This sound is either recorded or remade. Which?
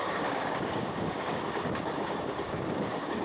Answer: remade